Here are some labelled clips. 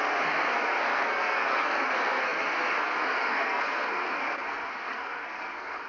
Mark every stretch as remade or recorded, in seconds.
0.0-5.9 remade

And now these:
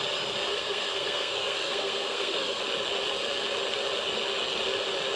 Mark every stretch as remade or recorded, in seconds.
0.0-0.5 recorded; 0.5-2.6 remade; 2.6-5.2 recorded